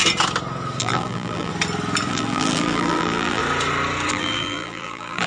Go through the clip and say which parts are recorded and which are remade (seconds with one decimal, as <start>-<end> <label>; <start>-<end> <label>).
0.0-0.8 recorded; 0.8-1.5 remade; 1.5-2.1 recorded; 2.1-3.4 remade; 3.4-4.1 recorded; 4.1-5.3 remade